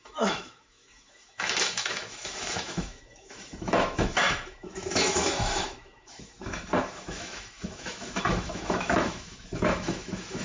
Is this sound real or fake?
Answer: fake